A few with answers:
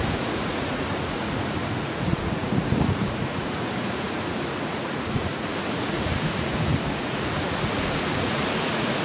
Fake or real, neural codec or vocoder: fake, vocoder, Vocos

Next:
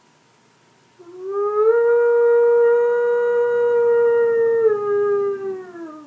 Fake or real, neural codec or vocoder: real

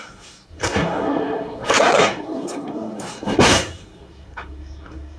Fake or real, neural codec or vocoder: fake, codec, SNAC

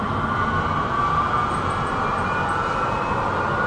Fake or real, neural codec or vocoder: real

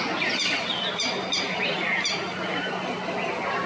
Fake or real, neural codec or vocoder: real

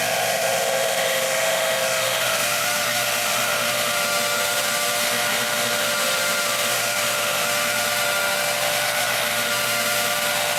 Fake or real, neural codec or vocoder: fake, autoencoder, DAC-VAE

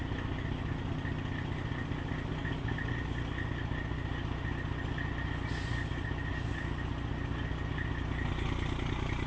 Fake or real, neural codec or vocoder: real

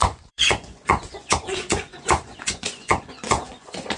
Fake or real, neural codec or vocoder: fake, vocoder, Vocos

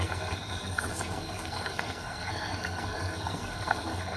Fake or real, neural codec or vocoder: fake, codec, SNAC